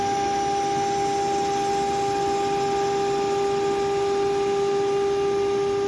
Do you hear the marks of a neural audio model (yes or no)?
no